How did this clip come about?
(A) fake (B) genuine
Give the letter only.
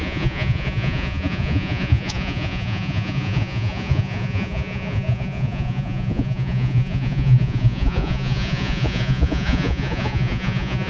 A